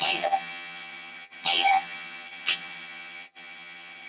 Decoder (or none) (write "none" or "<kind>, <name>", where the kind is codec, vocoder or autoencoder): vocoder, HiFi-GAN